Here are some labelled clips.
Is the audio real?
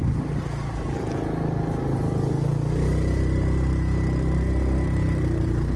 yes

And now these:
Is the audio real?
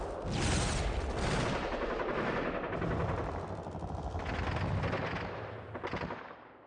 yes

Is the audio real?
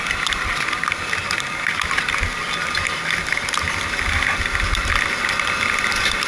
yes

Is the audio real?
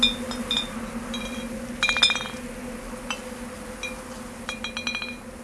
yes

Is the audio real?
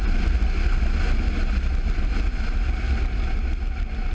yes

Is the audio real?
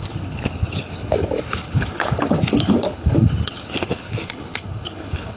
no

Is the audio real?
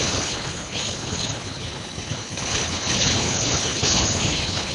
no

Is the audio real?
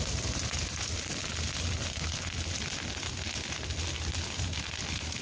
yes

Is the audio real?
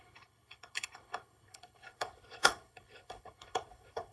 no